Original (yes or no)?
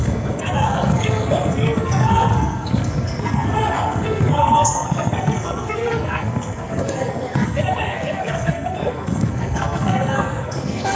no